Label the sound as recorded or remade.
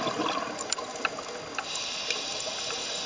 recorded